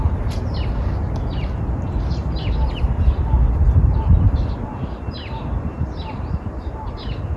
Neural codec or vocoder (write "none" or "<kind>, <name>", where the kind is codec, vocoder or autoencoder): none